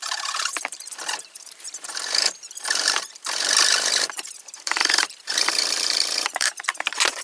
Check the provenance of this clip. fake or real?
fake